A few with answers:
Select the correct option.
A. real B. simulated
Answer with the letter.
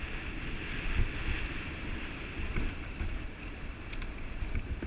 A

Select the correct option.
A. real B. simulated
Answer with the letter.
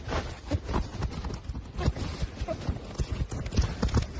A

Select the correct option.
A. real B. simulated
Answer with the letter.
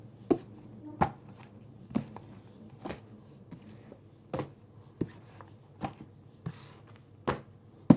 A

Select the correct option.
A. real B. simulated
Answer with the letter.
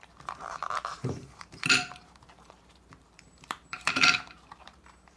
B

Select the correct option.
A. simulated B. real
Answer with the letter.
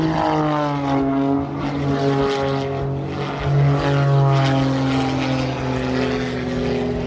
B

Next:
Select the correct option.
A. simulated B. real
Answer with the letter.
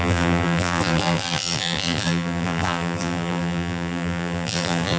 A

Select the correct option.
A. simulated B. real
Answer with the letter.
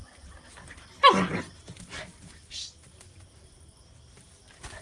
B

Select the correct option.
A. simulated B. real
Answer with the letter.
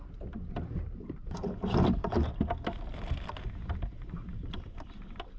B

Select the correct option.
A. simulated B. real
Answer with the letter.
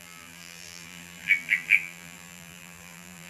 A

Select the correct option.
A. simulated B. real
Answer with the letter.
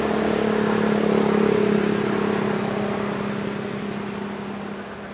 B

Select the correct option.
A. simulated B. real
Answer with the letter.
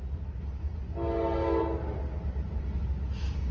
B